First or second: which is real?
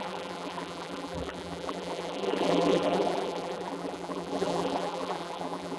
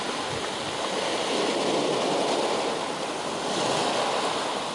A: second